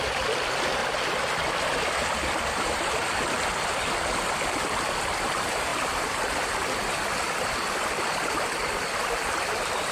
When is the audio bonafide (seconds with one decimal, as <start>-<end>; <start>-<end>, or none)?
0.0-5.7; 8.8-9.9

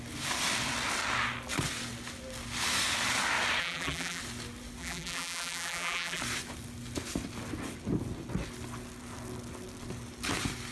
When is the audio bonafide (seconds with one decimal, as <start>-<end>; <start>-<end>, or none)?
0.0-3.6; 4.2-4.8; 6.2-10.7